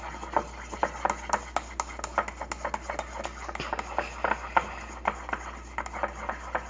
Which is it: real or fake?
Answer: real